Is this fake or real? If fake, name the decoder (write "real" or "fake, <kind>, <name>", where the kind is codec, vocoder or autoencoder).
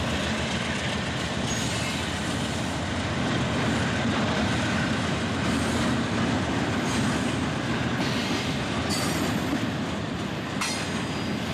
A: real